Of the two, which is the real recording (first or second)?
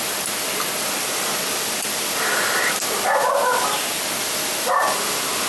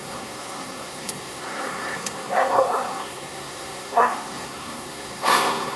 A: first